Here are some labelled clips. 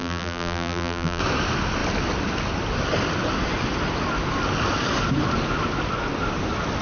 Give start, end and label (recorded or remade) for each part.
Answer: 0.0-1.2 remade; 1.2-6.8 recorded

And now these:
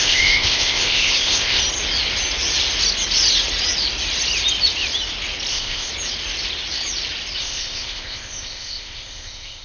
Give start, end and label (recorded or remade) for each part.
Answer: 0.0-1.6 remade; 1.6-5.5 recorded; 5.5-5.9 remade; 5.9-7.4 recorded; 7.4-9.6 remade

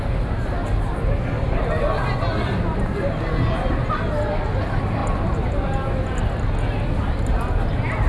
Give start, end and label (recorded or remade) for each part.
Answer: 0.0-8.1 recorded

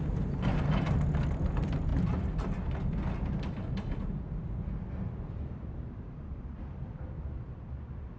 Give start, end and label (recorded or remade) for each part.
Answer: 0.0-8.2 remade

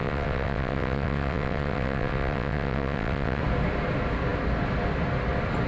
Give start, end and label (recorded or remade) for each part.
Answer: 0.0-3.4 remade; 3.4-5.7 recorded

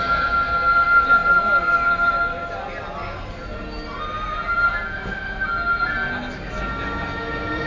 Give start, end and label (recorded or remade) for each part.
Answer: 0.0-7.7 recorded

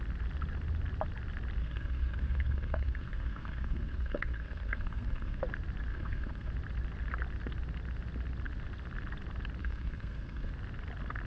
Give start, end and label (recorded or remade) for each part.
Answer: 0.0-1.6 recorded; 1.6-5.4 remade; 5.4-5.9 recorded; 5.9-6.5 remade; 6.5-9.6 recorded; 9.6-10.5 remade; 10.5-11.3 recorded

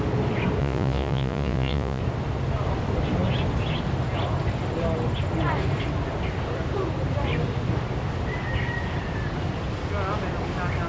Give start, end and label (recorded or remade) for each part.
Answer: 0.0-0.6 recorded; 0.6-2.0 remade; 2.0-10.9 recorded